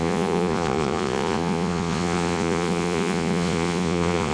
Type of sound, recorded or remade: remade